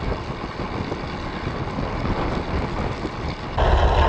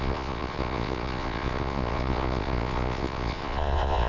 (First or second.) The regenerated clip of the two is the second